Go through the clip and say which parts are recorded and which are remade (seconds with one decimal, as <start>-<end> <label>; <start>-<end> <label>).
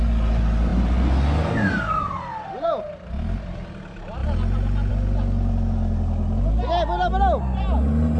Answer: 0.0-8.2 recorded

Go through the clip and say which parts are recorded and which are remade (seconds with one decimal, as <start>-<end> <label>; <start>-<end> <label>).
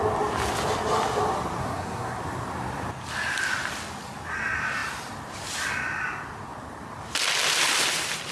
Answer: 0.0-1.6 recorded; 1.6-2.2 remade; 2.2-8.3 recorded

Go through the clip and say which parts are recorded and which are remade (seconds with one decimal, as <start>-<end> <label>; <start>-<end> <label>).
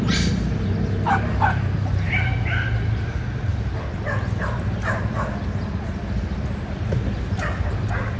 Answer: 0.0-8.2 recorded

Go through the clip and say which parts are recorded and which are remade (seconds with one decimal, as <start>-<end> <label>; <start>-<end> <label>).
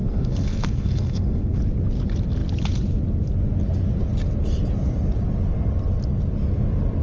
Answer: 0.0-1.6 remade; 1.6-7.0 recorded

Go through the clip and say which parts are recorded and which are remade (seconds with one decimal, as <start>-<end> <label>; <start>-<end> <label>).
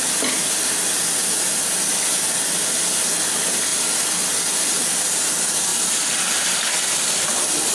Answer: 0.0-7.7 recorded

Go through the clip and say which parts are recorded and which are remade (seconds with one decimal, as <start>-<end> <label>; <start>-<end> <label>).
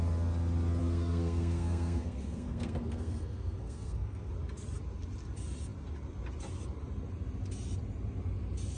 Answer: 0.0-0.8 recorded; 0.8-4.3 remade; 4.3-8.8 recorded